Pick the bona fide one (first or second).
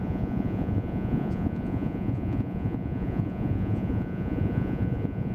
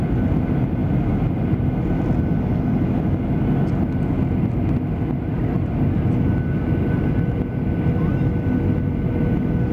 second